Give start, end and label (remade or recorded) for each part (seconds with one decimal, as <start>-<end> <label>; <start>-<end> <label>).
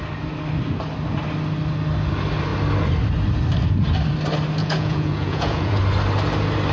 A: 0.0-4.6 recorded; 4.6-5.8 remade; 5.8-6.7 recorded